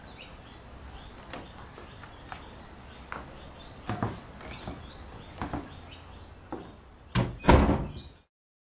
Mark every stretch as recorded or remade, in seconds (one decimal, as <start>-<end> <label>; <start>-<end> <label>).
0.0-8.7 recorded